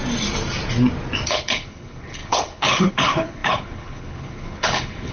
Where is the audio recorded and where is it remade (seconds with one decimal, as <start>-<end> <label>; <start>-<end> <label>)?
0.0-1.3 recorded; 1.3-5.1 remade

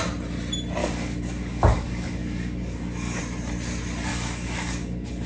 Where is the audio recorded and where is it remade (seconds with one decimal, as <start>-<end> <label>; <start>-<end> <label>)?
0.0-0.8 recorded; 0.8-3.2 remade; 3.2-4.1 recorded; 4.1-5.3 remade

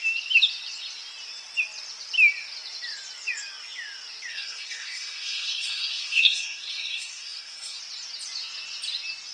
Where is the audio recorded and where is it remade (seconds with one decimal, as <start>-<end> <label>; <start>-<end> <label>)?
0.0-4.3 recorded; 4.3-7.8 remade; 7.8-9.3 recorded

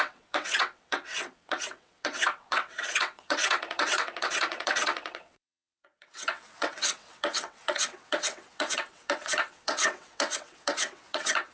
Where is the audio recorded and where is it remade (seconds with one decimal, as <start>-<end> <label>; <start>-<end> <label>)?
0.0-11.5 remade